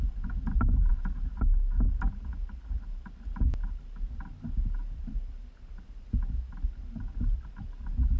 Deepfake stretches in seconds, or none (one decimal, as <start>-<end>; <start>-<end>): none